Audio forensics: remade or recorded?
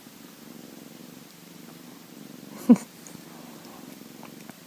remade